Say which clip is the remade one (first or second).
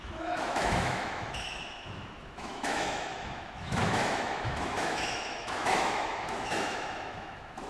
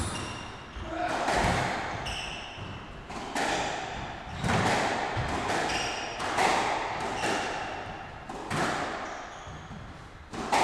first